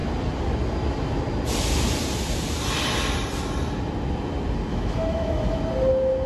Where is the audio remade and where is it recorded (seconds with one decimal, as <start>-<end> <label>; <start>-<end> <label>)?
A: 0.0-4.7 recorded; 4.7-5.6 remade; 5.6-6.3 recorded